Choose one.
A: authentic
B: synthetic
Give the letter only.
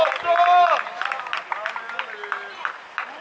A